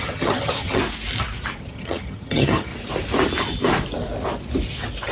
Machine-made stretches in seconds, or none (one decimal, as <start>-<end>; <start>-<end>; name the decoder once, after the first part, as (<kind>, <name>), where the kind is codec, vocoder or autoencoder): 0.0-0.8 (vocoder, HiFi-GAN); 1.6-2.7